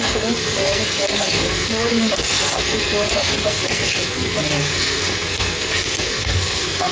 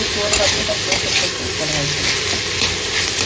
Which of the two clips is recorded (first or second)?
second